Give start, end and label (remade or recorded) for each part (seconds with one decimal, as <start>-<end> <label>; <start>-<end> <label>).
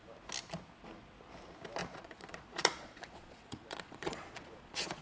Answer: 0.0-1.8 recorded; 1.8-5.0 remade